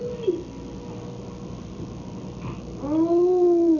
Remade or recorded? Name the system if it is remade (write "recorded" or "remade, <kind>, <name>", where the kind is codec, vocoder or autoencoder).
recorded